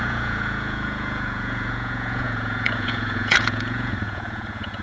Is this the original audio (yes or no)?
no